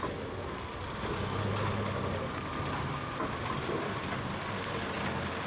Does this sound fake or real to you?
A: real